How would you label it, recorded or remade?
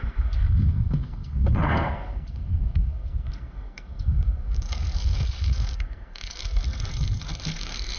remade